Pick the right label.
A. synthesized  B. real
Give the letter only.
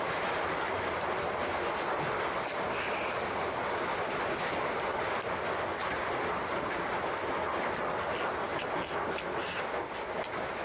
B